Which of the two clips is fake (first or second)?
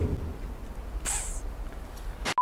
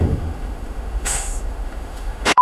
second